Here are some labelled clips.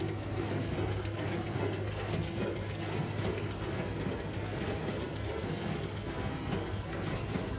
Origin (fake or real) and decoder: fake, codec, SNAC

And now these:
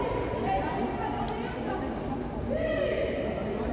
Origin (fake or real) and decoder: real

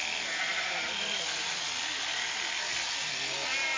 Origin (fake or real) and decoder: real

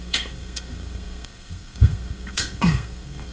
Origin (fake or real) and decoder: fake, codec, SNAC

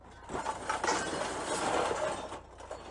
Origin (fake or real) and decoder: real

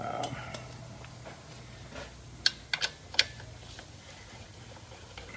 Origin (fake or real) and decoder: real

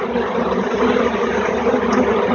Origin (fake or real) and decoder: real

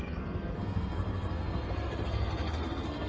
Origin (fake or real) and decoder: fake, codec, SNAC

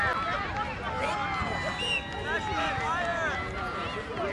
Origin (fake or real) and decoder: real